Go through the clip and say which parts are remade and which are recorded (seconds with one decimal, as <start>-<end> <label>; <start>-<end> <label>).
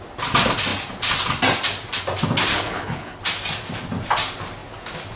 0.0-2.5 recorded; 2.5-3.2 remade; 3.2-5.2 recorded